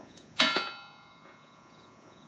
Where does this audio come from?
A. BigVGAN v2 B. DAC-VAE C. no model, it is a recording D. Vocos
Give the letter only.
D